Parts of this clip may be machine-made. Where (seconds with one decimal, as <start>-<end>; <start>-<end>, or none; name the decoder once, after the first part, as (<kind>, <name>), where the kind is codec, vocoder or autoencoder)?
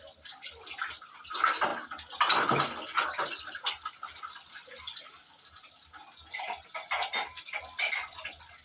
none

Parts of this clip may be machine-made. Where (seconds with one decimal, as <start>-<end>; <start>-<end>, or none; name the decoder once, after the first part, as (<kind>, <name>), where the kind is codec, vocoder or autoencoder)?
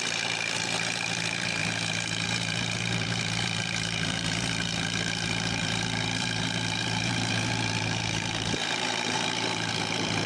0.0-10.3 (vocoder, BigVGAN v2)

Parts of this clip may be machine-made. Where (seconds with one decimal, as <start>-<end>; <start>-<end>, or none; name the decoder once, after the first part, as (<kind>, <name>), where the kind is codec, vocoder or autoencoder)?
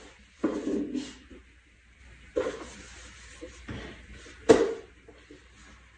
none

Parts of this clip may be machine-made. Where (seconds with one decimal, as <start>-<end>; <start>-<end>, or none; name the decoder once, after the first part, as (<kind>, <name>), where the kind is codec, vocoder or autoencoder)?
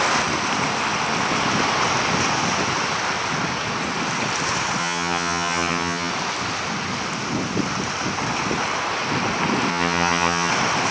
4.8-6.1 (vocoder, HiFi-GAN); 9.7-10.5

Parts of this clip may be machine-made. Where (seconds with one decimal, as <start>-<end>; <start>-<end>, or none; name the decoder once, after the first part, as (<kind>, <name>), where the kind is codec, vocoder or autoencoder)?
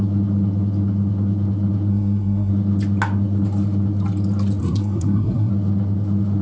1.9-2.5 (codec, SNAC); 4.6-5.5